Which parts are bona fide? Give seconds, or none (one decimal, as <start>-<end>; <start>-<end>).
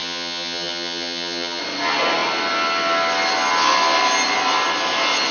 1.6-5.3